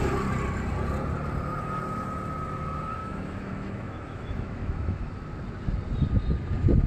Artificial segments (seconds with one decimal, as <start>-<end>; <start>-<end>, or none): 3.0-5.1